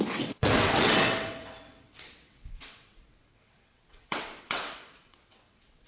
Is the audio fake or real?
fake